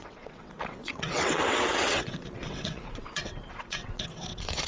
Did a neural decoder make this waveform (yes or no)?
yes